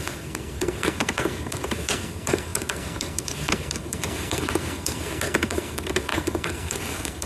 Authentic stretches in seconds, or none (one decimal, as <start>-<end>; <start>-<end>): none